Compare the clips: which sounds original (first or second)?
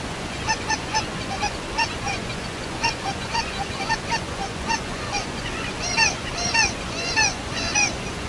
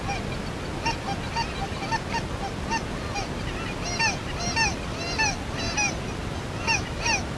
second